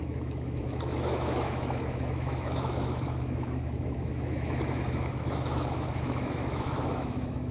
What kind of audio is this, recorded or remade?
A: remade